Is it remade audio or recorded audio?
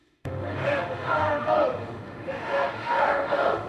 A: remade